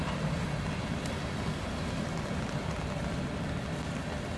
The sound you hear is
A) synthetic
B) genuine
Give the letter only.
B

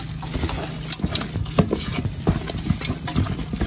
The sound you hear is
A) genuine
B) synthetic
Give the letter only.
A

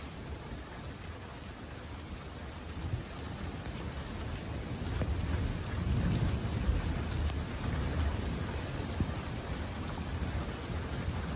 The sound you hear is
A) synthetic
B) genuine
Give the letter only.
B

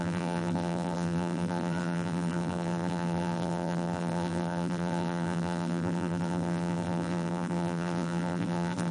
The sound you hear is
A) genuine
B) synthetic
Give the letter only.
B